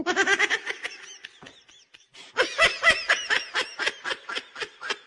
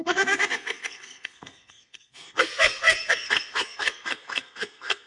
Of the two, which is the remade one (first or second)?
second